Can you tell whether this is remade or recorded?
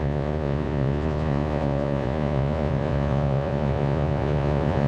remade